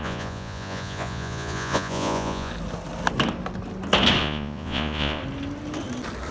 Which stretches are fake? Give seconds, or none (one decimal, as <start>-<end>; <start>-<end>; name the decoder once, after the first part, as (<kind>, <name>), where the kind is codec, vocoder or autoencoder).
0.0-2.5 (vocoder, Vocos); 4.2-5.2